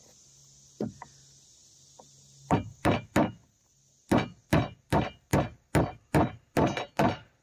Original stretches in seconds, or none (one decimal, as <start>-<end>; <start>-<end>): 0.0-7.4